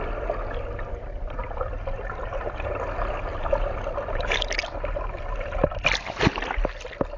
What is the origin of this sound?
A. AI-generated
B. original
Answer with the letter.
B